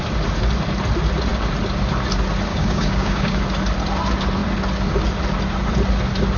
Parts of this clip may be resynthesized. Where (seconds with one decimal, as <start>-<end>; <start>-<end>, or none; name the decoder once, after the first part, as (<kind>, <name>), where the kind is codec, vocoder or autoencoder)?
2.5-3.4 (codec, DAC)